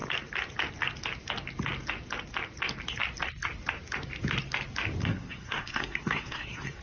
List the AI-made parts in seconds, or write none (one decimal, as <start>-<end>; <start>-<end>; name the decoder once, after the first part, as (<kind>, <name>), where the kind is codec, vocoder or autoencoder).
5.0-6.8 (codec, SNAC)